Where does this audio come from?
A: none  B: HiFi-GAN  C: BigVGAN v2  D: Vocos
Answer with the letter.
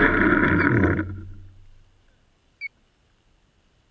A